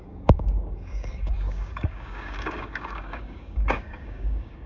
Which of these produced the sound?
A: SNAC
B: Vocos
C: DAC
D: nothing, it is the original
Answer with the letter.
C